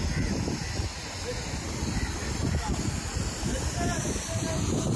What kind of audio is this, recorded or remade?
recorded